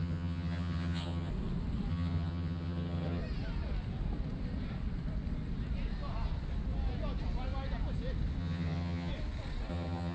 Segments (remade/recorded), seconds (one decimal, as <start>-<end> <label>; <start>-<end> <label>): 0.0-1.3 remade; 1.3-1.9 recorded; 1.9-3.2 remade; 3.2-8.4 recorded; 8.4-9.1 remade; 9.1-9.7 recorded; 9.7-10.1 remade